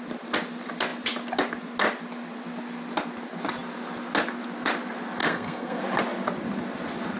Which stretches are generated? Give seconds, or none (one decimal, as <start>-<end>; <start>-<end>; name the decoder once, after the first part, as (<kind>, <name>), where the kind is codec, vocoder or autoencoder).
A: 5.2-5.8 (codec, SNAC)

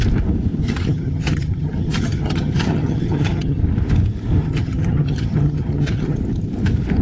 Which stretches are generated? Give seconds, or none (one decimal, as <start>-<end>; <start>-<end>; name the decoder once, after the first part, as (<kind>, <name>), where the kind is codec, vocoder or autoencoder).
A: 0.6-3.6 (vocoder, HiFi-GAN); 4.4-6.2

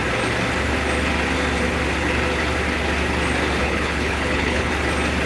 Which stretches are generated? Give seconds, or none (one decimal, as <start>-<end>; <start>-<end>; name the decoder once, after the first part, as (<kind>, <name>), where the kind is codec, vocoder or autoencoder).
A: 3.6-4.7 (codec, HILCodec)

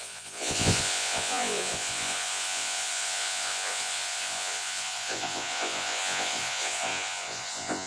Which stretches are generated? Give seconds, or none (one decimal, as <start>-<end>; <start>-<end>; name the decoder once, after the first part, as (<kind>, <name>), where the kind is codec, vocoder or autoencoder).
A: 0.0-7.9 (vocoder, Vocos)

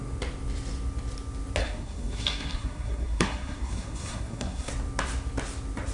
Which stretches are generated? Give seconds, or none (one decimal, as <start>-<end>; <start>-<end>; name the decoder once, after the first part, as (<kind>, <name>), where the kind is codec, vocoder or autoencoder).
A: 1.6-4.7 (codec, SNAC)